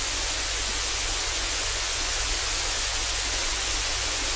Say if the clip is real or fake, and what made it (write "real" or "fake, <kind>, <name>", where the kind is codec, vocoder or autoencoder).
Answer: fake, vocoder, Vocos